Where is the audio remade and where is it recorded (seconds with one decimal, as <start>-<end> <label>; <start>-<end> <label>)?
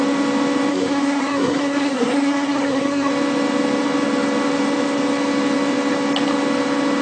0.0-0.7 recorded; 0.7-3.1 remade; 3.1-7.0 recorded